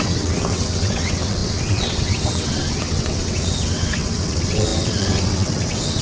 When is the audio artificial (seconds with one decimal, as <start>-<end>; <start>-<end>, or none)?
0.0-6.0